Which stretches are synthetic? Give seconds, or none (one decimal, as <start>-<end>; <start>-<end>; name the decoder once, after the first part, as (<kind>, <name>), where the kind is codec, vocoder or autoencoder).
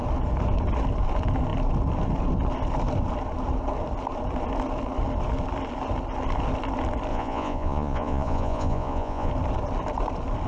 7.1-9.3 (vocoder, Vocos)